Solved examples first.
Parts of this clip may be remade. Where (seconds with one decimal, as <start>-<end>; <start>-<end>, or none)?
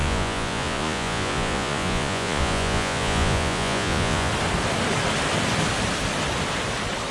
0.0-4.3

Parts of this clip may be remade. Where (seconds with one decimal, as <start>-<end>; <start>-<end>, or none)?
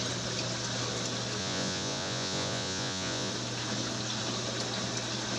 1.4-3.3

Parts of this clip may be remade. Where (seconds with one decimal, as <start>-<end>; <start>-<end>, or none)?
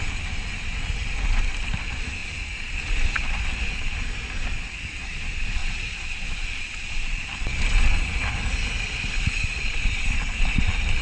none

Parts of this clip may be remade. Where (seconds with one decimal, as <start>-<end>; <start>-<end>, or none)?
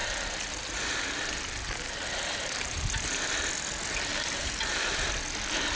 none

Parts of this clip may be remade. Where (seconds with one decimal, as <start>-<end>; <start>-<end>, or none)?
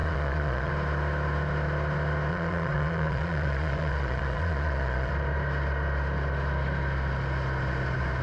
0.0-0.7; 2.3-5.1